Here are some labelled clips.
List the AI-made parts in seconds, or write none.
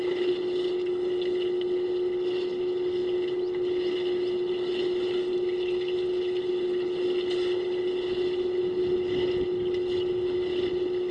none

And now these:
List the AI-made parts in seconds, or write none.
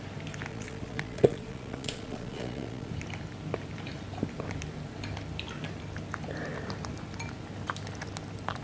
0.5-2.9 (vocoder, Vocos)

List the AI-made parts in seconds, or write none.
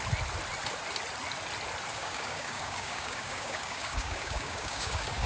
1.9-5.3 (codec, DAC)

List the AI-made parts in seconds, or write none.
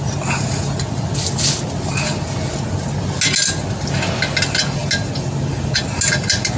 none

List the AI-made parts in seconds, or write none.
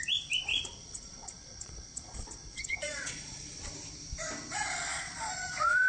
0.5-3.6 (vocoder, Vocos); 4.9-5.9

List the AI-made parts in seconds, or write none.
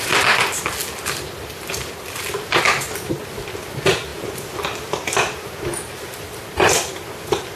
none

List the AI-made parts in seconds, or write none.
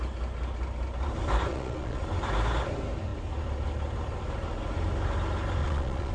1.5-2.0 (vocoder, Vocos); 5.6-6.1